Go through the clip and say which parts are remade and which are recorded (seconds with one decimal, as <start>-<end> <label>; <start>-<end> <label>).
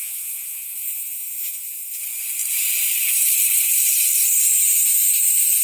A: 0.0-2.0 remade; 2.0-5.6 recorded